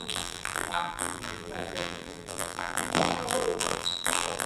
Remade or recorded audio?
remade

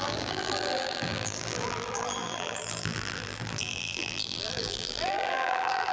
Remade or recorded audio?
remade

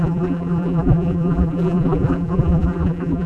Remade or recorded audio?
remade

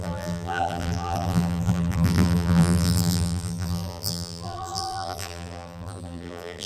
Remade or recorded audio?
remade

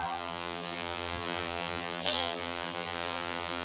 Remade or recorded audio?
remade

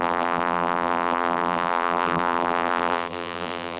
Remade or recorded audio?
remade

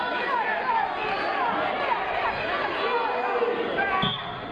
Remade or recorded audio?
recorded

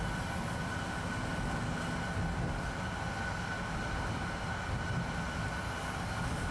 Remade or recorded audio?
recorded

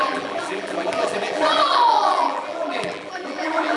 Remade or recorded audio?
remade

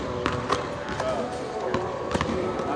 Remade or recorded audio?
remade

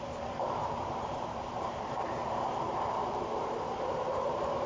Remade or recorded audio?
remade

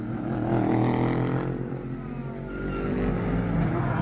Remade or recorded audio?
recorded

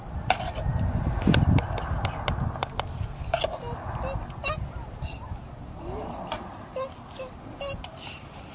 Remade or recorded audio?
recorded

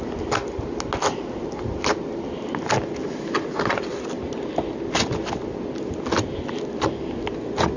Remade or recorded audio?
recorded